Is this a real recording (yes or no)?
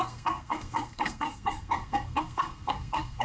no